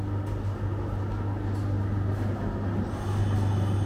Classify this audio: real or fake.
real